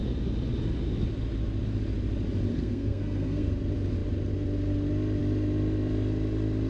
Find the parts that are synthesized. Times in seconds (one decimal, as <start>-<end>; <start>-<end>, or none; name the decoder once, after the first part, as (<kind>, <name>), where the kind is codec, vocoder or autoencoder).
2.5-3.5 (codec, SNAC)